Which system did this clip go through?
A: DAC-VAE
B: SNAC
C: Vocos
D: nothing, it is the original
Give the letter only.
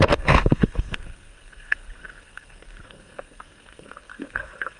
B